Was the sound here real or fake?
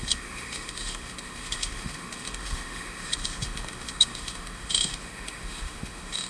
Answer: fake